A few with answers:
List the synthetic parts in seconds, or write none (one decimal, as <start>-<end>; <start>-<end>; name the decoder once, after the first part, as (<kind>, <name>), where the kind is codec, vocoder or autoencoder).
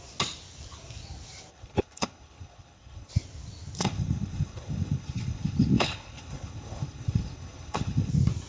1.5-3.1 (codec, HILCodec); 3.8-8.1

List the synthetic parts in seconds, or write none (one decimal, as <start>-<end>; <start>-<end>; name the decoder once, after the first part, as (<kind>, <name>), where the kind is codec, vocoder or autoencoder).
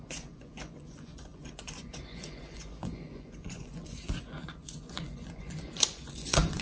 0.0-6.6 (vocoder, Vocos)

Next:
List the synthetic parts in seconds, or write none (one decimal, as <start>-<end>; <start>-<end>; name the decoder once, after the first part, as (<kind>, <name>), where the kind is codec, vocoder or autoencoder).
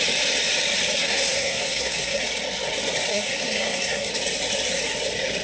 1.0-2.2 (codec, SNAC); 3.1-4.1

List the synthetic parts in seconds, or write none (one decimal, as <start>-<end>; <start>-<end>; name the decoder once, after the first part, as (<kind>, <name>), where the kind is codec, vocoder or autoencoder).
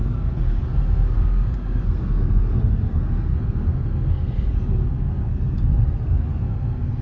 0.0-7.0 (codec, SNAC)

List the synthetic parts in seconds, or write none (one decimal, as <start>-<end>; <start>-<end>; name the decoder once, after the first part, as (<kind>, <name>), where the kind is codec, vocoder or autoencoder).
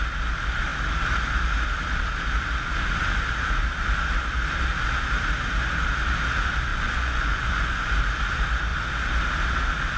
6.7-7.9 (vocoder, Vocos)